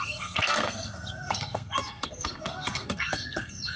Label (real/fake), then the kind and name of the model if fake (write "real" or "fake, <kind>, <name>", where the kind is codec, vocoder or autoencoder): fake, codec, SNAC